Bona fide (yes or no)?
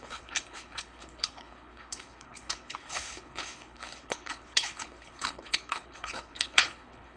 no